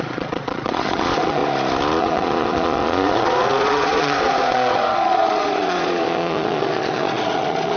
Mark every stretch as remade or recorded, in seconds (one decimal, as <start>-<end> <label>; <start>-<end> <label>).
0.0-1.4 remade; 1.4-2.0 recorded; 2.0-7.8 remade